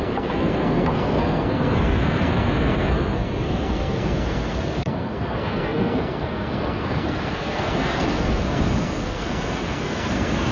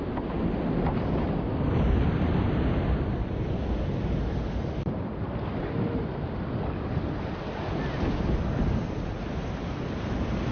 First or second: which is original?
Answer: second